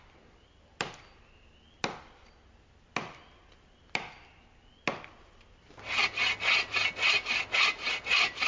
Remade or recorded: recorded